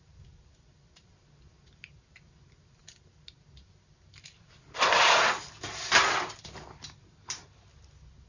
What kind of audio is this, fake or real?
real